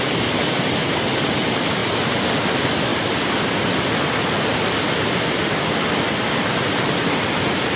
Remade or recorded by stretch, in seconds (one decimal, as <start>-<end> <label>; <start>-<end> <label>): 0.0-7.8 recorded